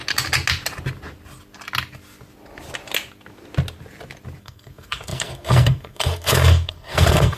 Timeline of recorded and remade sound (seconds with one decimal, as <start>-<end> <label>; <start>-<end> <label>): 0.0-4.4 recorded; 4.4-7.4 remade